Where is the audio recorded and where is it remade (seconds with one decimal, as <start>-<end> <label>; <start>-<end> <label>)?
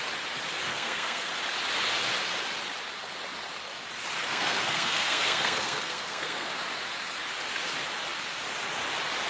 0.0-0.7 recorded; 0.7-1.3 remade; 1.3-4.2 recorded; 4.2-6.5 remade; 6.5-9.3 recorded